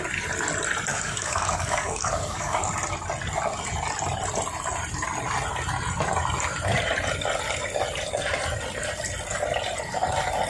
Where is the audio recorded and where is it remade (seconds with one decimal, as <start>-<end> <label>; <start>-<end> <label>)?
0.0-0.9 recorded; 0.9-2.7 remade; 2.7-10.5 recorded

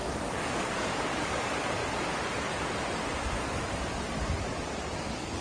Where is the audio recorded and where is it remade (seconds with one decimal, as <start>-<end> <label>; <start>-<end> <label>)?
0.0-1.8 remade; 1.8-5.0 recorded; 5.0-5.4 remade

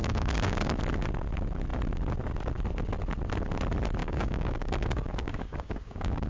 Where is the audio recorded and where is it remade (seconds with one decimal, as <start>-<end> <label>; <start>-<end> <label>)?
0.0-0.8 remade; 0.8-4.0 recorded; 4.0-6.3 remade

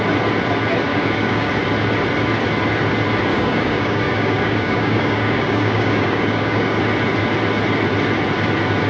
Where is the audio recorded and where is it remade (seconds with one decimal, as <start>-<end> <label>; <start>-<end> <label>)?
0.0-0.9 recorded; 0.9-1.5 remade; 1.5-3.3 recorded; 3.3-6.8 remade; 6.8-8.9 recorded